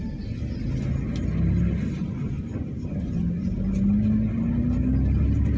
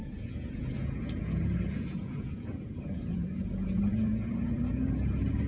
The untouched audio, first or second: first